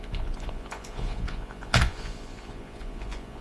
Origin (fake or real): fake